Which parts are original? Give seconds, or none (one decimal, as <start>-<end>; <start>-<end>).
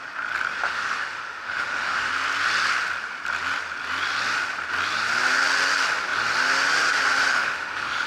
0.0-0.6; 2.1-7.3